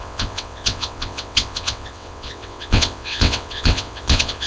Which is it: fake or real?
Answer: fake